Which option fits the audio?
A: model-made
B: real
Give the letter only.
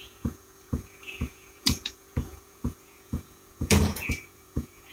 A